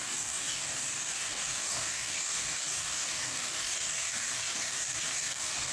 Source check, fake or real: fake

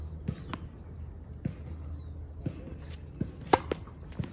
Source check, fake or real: real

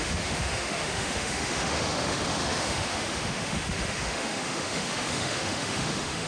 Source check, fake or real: fake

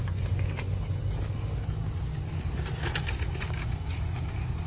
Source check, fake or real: real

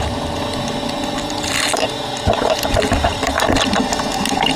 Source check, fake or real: real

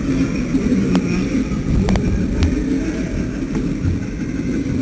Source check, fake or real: real